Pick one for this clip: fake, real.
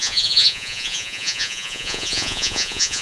fake